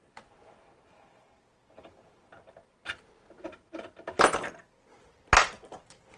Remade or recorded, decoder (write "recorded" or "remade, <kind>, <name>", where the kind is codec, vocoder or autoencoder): recorded